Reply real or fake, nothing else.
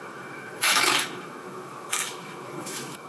fake